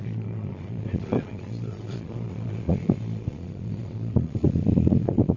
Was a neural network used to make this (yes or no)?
yes